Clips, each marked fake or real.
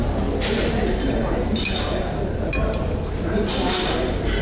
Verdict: real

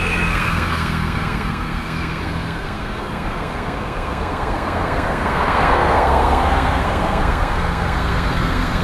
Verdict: fake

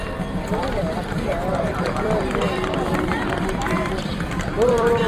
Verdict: fake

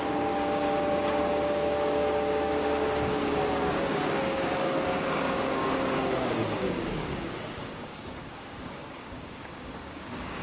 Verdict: fake